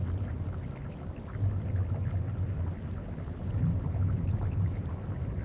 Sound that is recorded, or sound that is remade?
recorded